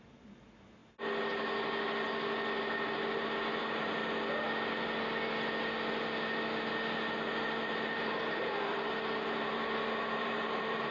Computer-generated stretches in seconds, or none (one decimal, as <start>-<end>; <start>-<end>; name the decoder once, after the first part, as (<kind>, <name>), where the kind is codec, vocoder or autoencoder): 0.0-0.8 (vocoder, BigVGAN v2); 3.6-4.0; 7.6-9.6; 10.2-10.9